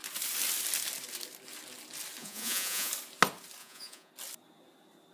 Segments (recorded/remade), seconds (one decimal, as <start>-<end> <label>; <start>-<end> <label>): 0.0-2.2 recorded; 2.2-2.9 remade; 2.9-3.6 recorded; 3.6-4.1 remade; 4.1-5.1 recorded